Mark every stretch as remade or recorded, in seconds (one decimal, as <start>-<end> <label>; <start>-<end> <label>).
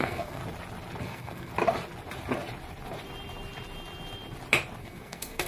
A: 0.0-0.4 remade; 0.4-1.0 recorded; 1.0-1.5 remade; 1.5-4.8 recorded; 4.8-5.5 remade